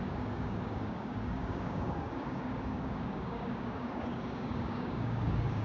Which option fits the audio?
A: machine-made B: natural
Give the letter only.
A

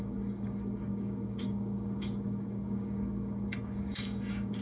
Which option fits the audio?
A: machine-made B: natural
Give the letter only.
A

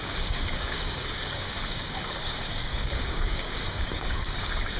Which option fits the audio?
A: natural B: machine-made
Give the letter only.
B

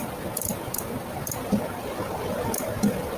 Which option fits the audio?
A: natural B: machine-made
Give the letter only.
A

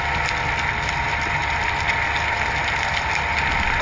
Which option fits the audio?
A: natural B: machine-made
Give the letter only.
A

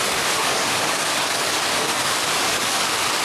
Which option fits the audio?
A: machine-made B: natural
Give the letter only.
A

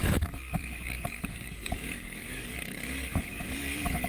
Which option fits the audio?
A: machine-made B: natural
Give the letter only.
A